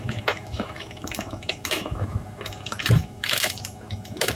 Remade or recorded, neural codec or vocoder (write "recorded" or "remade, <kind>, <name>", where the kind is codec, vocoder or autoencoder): remade, autoencoder, DAC-VAE